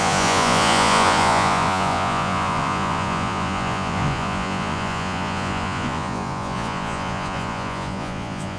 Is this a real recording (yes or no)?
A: no